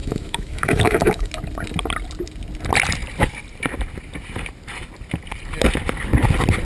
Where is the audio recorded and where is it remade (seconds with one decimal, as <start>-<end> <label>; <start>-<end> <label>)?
0.0-1.3 remade; 1.3-6.6 recorded